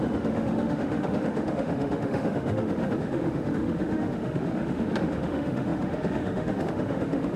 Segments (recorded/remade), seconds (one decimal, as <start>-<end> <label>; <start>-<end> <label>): 0.0-7.4 remade